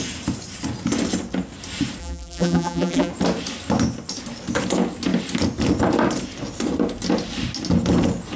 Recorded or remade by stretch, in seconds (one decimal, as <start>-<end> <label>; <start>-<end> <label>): 0.0-2.0 recorded; 2.0-3.1 remade; 3.1-8.4 recorded